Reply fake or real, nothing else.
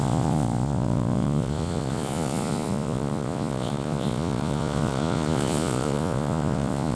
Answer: fake